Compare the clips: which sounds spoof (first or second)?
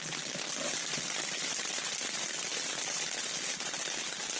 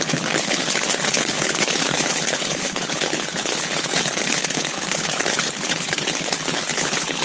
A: second